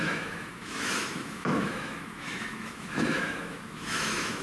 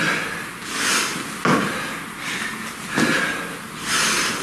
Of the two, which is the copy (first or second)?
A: first